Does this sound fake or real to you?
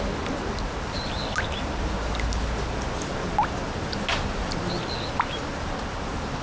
real